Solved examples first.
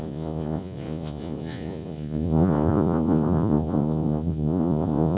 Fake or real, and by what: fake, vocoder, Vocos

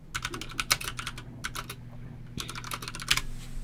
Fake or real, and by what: real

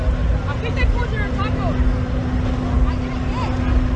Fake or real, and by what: real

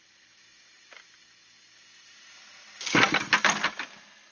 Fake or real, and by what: real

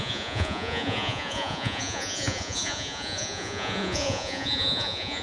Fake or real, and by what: fake, vocoder, Vocos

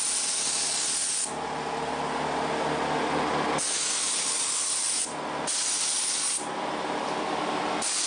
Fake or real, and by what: real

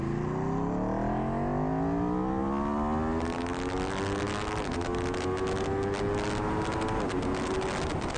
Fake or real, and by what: real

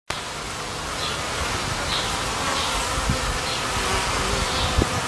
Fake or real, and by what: real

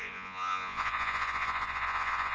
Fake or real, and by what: fake, vocoder, Vocos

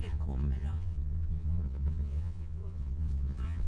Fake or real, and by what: fake, vocoder, Vocos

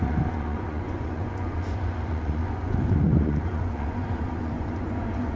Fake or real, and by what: fake, vocoder, Vocos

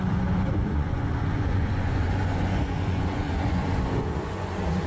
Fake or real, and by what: fake, vocoder, Vocos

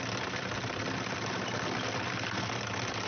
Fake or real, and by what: real